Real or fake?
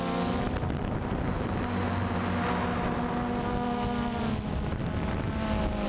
real